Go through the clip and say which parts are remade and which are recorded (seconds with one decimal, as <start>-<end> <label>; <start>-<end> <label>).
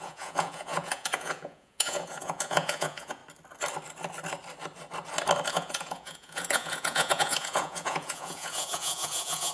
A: 0.0-3.2 remade; 3.2-5.5 recorded; 5.5-9.5 remade